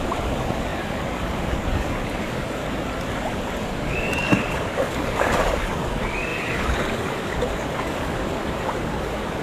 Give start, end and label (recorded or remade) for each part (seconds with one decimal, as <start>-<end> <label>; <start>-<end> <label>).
0.0-2.6 remade; 2.6-3.1 recorded; 3.1-9.4 remade